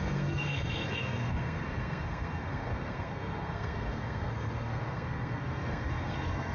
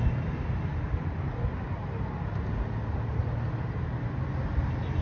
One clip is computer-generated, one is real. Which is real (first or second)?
second